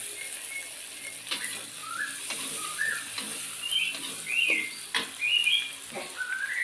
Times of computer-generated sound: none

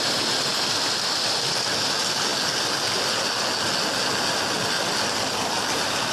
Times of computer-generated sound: none